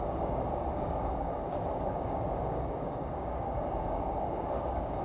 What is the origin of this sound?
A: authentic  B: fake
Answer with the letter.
B